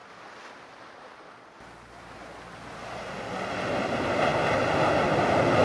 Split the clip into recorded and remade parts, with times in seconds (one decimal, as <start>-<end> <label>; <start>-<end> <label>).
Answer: 0.0-5.6 recorded